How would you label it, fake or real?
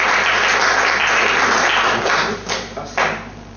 real